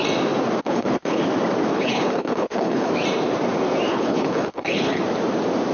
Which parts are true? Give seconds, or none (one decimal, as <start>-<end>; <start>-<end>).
0.0-0.6; 1.2-1.7; 2.9-3.9; 5.0-5.7